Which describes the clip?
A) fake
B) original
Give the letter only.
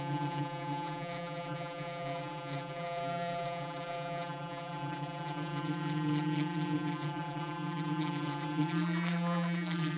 A